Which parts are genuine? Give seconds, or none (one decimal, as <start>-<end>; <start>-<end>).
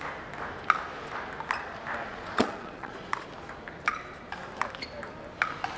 0.0-2.0; 3.3-5.8